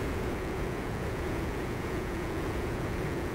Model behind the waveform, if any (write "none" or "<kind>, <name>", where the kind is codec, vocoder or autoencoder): vocoder, Vocos